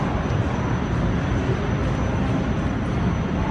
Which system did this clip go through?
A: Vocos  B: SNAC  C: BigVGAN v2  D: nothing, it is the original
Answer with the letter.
D